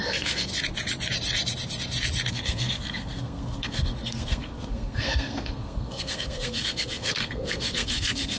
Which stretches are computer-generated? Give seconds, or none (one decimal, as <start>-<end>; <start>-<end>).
0.0-0.5; 2.3-8.4